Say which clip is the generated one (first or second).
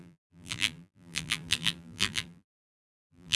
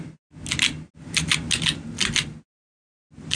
first